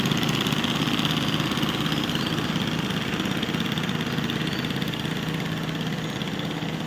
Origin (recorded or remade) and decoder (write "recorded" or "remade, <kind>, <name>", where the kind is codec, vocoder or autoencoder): recorded